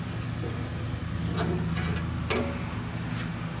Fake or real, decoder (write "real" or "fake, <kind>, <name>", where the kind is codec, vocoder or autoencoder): real